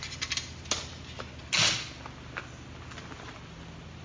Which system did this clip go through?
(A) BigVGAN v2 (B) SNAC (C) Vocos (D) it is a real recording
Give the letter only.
D